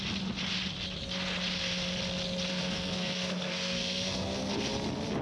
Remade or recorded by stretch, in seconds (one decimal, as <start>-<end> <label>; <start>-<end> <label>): 0.0-2.5 recorded; 2.5-4.5 remade; 4.5-5.2 recorded

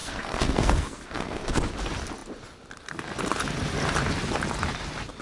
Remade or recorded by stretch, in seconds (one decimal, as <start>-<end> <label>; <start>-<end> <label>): 0.0-1.6 remade; 1.6-5.2 recorded